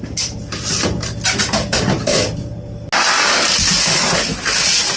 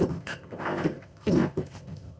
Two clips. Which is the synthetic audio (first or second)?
second